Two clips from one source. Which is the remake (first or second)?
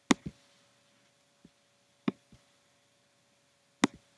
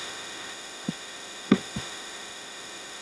second